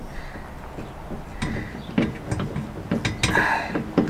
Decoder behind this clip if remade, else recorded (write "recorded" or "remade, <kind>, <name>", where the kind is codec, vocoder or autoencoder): recorded